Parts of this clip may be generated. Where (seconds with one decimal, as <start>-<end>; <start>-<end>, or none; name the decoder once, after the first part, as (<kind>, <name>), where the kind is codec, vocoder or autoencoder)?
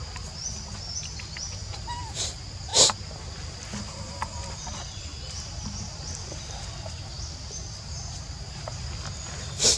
none